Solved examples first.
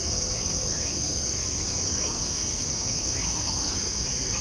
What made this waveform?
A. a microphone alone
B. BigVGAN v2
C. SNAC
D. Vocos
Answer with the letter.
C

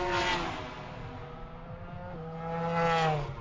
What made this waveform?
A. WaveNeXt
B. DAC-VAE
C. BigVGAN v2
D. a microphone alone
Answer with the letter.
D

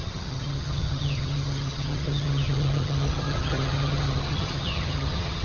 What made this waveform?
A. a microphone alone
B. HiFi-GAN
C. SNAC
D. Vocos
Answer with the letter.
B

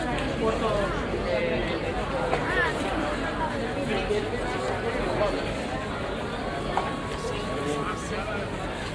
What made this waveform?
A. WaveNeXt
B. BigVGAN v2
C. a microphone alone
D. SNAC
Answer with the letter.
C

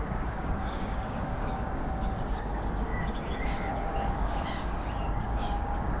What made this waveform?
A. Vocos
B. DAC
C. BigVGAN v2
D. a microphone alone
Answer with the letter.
B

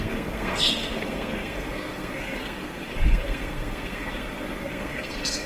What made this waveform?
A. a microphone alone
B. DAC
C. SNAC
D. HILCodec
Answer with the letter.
C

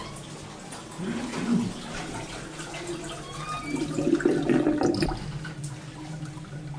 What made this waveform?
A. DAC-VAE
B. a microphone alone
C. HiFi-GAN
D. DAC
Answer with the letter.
B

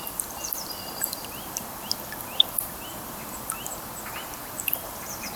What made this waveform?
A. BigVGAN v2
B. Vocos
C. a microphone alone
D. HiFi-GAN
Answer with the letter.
A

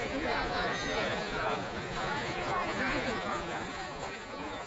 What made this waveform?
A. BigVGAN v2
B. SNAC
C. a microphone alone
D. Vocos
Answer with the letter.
D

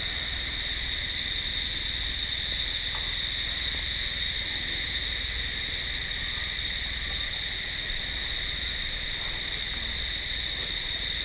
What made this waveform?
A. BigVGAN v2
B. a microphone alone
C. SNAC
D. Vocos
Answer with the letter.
B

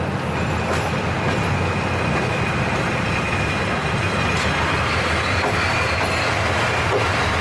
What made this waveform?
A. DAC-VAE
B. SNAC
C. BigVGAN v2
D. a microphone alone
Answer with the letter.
D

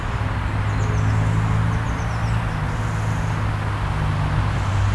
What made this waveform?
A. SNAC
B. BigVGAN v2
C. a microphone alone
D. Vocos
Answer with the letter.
C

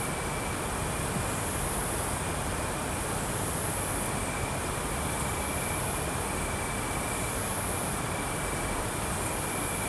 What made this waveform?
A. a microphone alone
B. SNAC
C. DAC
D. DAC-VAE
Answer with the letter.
A